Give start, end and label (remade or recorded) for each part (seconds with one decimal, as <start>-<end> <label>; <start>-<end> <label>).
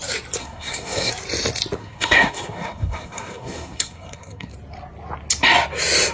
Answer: 0.0-0.4 recorded; 0.4-1.1 remade; 1.1-1.8 recorded; 1.8-4.5 remade; 4.5-6.1 recorded